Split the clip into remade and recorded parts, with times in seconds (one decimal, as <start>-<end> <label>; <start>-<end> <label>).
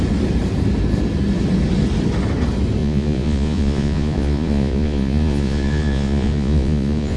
0.0-2.8 recorded; 2.8-7.2 remade